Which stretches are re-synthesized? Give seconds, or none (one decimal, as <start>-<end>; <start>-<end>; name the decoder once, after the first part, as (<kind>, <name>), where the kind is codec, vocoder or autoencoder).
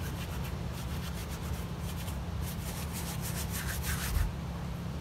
none